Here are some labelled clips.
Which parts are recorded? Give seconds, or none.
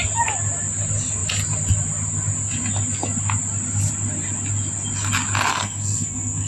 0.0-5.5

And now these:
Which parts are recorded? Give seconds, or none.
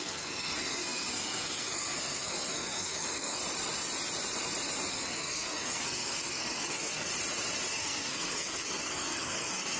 3.4-4.9; 7.1-7.7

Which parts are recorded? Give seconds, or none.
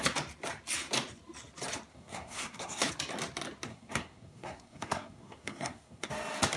0.0-1.9; 2.9-3.7; 6.1-6.6